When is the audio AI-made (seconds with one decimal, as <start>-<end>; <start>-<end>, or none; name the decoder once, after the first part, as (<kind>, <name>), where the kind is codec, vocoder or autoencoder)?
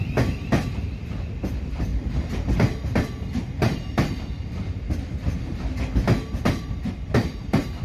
none